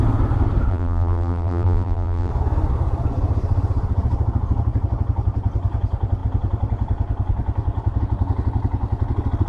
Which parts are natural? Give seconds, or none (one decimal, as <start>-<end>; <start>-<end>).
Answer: 0.0-0.7; 2.3-9.5